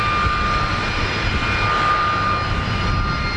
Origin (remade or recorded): recorded